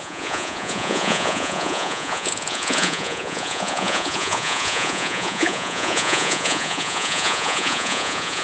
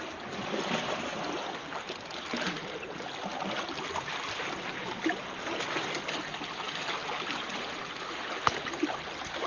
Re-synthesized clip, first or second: first